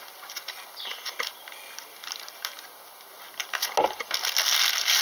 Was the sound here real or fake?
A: real